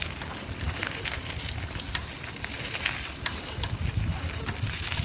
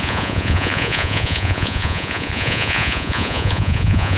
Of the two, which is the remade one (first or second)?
second